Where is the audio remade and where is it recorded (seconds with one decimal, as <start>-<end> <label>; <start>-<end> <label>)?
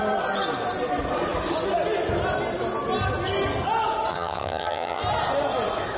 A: 0.0-4.1 recorded; 4.1-5.0 remade; 5.0-6.0 recorded